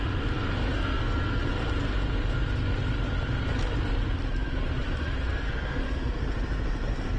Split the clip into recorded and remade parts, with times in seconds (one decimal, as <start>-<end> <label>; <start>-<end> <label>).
0.0-0.7 recorded; 0.7-1.4 remade; 1.4-5.2 recorded; 5.2-5.8 remade; 5.8-7.2 recorded